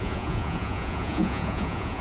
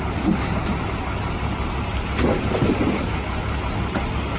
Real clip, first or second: second